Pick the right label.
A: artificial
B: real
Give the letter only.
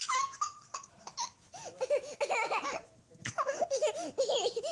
A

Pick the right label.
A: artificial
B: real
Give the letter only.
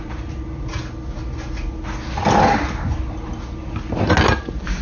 B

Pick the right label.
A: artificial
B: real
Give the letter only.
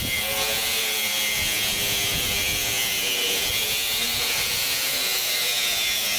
A